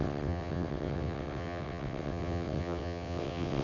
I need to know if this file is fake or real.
fake